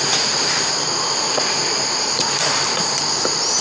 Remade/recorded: remade